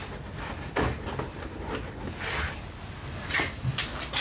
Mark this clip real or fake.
real